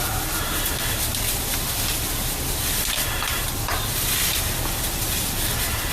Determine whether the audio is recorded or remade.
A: recorded